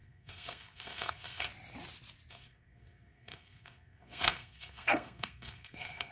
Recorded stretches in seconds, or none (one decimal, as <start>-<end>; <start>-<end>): 1.5-2.3